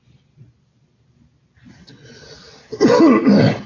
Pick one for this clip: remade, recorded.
recorded